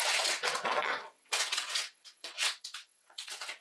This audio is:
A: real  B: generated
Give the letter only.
B